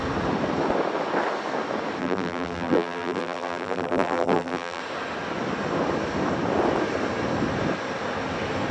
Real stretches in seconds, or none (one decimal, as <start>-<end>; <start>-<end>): 0.0-2.0; 4.8-8.7